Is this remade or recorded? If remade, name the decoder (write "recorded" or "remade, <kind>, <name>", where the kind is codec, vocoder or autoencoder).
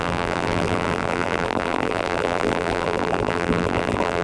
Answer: remade, vocoder, BigVGAN v2